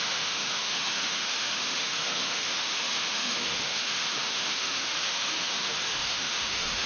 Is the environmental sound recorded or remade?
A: remade